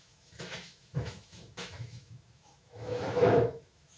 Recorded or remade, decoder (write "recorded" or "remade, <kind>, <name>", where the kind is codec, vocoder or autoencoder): remade, autoencoder, DAC-VAE